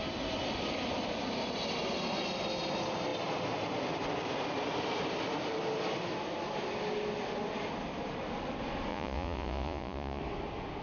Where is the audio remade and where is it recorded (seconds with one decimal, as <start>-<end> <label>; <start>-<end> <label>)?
0.0-8.9 recorded; 8.9-10.2 remade; 10.2-10.8 recorded